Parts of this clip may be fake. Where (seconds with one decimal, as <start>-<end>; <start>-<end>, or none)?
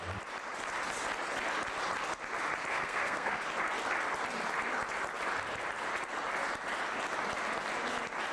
2.7-3.4